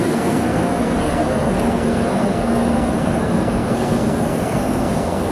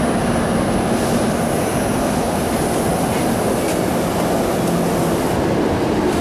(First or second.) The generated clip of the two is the first